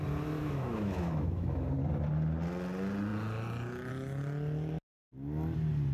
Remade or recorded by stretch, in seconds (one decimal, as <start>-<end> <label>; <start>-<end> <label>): 0.0-0.4 recorded; 0.4-1.7 remade; 1.7-5.9 recorded